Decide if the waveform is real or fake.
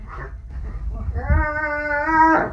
real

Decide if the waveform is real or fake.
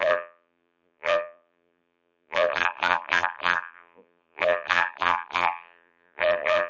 fake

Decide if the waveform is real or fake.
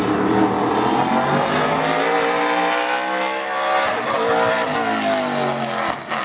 real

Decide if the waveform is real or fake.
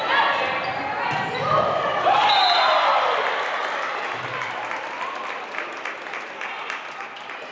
real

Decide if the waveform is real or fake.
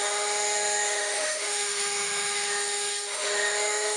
fake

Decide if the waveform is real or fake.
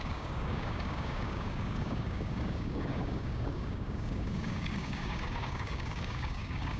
fake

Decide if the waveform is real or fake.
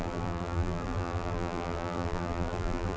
fake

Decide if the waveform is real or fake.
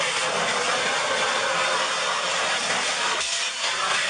real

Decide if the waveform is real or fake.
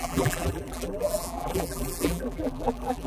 fake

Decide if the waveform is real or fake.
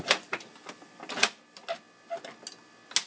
real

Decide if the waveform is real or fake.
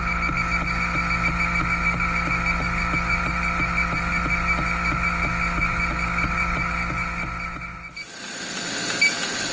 real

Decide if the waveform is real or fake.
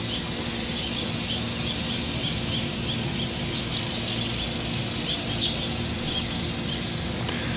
real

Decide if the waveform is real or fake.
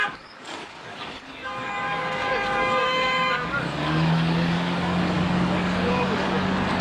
fake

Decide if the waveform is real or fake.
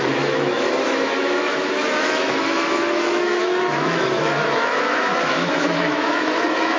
fake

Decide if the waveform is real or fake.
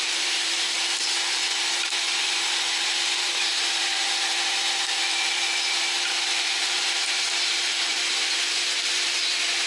fake